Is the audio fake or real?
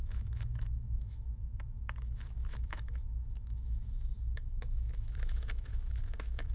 fake